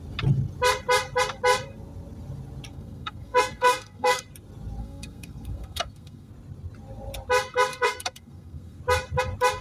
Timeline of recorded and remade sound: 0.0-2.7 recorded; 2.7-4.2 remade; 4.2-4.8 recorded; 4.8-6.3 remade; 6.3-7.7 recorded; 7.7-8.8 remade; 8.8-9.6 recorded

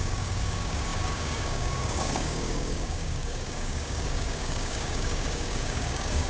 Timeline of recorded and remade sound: 0.0-6.3 remade

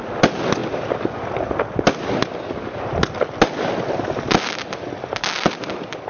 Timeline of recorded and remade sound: 0.0-6.1 recorded

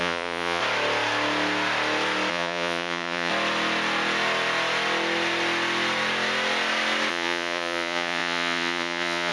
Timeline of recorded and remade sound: 0.0-0.6 remade; 0.6-2.3 recorded; 2.3-3.3 remade; 3.3-7.1 recorded; 7.1-9.3 remade